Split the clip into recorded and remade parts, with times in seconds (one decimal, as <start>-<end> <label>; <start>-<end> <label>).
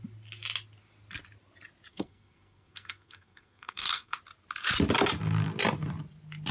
0.0-1.9 recorded; 1.9-4.2 remade; 4.2-6.5 recorded